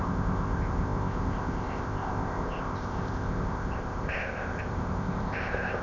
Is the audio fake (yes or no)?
yes